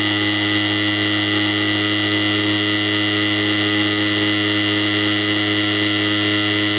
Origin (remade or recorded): recorded